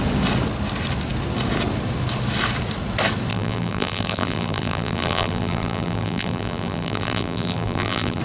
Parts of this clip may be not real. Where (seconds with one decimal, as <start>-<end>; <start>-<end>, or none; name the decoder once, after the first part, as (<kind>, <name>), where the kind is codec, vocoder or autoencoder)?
3.3-8.2 (vocoder, BigVGAN v2)